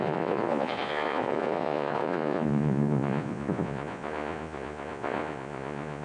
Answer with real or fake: fake